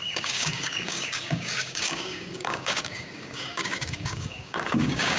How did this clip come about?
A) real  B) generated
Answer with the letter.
B